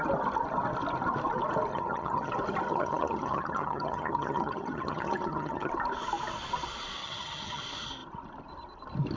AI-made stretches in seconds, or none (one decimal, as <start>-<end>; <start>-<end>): 1.7-2.3; 2.7-5.7; 7.0-7.6